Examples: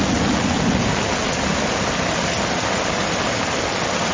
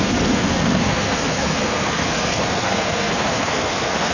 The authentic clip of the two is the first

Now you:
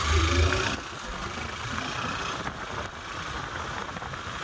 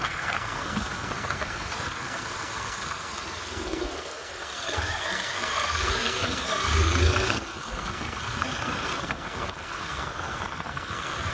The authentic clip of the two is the first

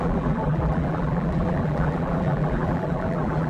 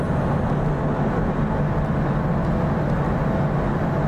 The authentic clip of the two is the second